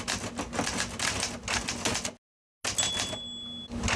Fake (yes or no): no